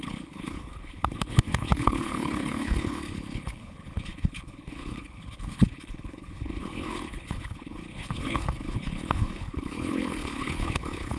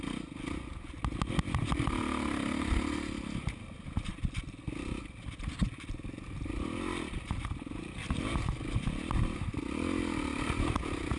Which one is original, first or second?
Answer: second